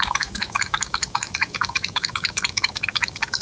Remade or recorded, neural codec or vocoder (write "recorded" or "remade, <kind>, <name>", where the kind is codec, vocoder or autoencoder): remade, autoencoder, DAC-VAE